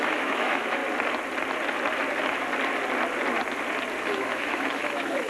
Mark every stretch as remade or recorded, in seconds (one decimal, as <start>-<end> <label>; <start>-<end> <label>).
0.0-0.8 remade; 0.8-4.0 recorded; 4.0-5.3 remade